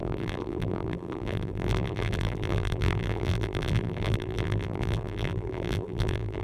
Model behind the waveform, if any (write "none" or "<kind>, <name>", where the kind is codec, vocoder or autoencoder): vocoder, BigVGAN v2